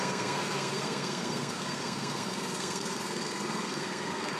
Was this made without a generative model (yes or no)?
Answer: no